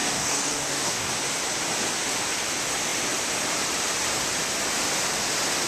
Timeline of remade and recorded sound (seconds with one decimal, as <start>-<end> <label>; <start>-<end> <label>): 0.0-1.1 remade; 1.1-5.7 recorded